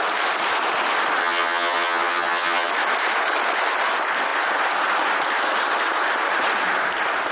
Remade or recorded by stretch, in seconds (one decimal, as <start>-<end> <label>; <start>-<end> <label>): 0.0-1.2 recorded; 1.2-2.7 remade; 2.7-7.3 recorded